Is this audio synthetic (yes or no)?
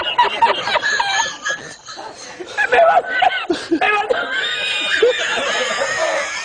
no